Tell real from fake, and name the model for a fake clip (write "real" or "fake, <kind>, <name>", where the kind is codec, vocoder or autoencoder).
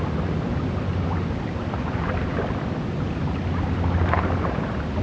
real